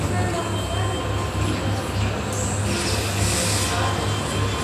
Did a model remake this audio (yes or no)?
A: no